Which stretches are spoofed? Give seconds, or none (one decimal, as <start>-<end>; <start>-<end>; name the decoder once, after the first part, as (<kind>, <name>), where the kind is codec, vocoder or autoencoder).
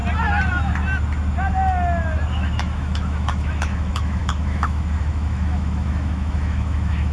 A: 2.3-7.1 (autoencoder, DAC-VAE)